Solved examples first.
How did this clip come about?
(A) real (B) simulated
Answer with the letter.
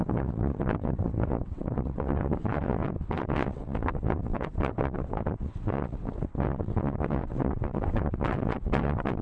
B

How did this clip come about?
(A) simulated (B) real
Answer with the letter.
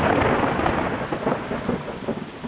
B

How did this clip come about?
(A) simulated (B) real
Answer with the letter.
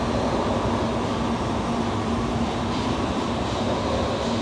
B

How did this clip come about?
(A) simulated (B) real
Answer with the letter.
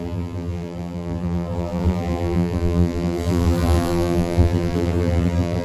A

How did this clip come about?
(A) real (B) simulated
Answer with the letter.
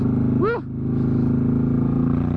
A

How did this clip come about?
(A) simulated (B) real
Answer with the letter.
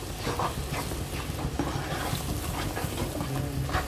B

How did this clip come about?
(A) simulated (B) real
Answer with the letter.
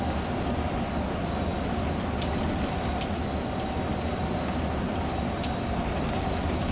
B